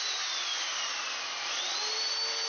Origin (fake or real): real